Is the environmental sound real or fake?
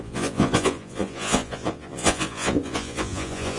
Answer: fake